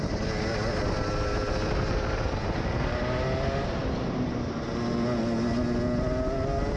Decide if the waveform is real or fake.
real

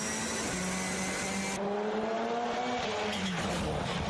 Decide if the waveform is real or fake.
real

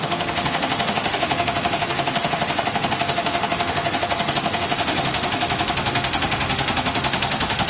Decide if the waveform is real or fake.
fake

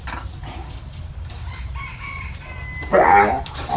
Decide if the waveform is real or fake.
real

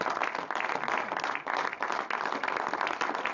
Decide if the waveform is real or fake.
real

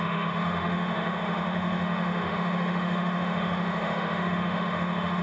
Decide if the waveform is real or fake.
fake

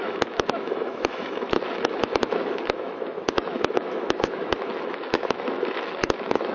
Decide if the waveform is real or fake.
fake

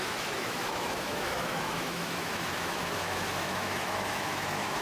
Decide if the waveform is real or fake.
fake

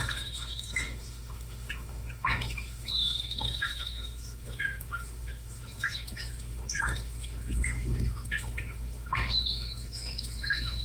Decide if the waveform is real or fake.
fake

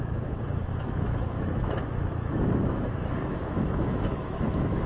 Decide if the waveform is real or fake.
fake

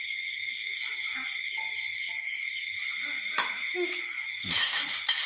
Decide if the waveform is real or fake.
fake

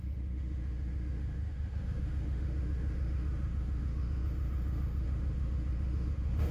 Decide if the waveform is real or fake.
fake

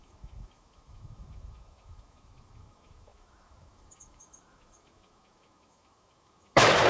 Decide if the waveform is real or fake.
fake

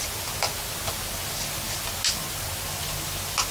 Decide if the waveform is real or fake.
real